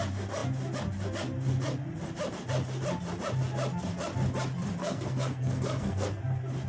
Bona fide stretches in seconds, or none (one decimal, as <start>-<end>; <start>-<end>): 0.0-4.8; 6.2-6.7